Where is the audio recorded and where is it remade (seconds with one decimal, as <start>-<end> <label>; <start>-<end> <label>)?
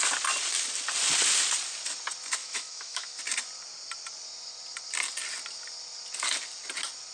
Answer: 0.0-2.4 recorded; 2.4-3.2 remade; 3.2-7.1 recorded